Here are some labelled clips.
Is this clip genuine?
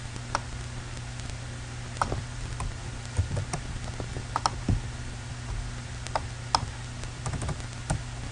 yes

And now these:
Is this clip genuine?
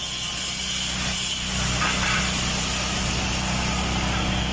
yes